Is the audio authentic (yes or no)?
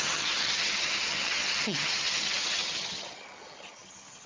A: no